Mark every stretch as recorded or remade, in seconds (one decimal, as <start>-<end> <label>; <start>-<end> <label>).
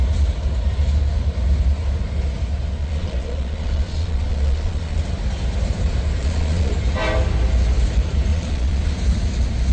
0.0-2.8 recorded; 2.8-5.0 remade; 5.0-6.2 recorded; 6.2-6.7 remade; 6.7-8.3 recorded; 8.3-8.8 remade; 8.8-9.7 recorded